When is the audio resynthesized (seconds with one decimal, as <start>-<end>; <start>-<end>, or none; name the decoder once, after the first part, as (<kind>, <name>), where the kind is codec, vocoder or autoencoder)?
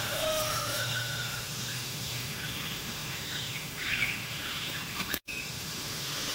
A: 0.0-6.3 (autoencoder, DAC-VAE)